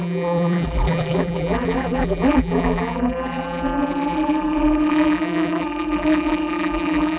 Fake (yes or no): yes